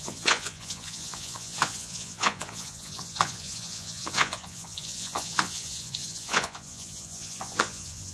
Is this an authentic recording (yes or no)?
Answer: no